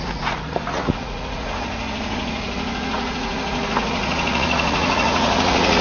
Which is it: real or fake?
fake